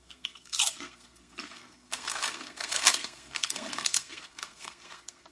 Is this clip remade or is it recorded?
remade